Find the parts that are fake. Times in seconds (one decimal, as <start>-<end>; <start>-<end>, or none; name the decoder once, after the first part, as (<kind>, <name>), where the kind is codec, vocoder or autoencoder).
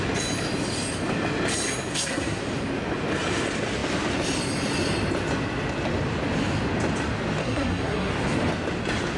1.9-2.4 (codec, SNAC); 7.4-8.1